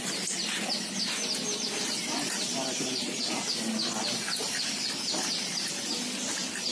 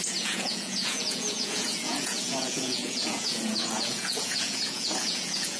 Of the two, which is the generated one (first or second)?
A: second